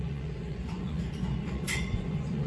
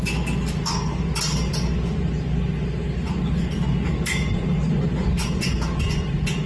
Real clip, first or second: second